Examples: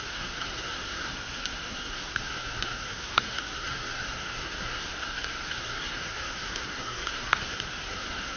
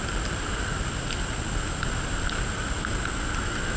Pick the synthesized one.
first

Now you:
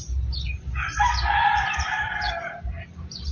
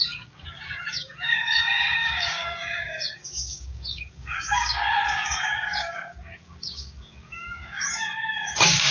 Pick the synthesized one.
second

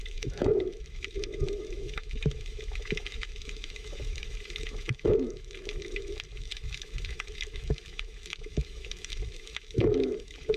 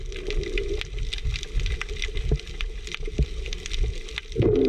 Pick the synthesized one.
first